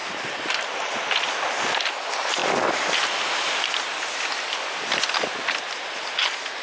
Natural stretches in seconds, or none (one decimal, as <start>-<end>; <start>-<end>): 0.0-6.6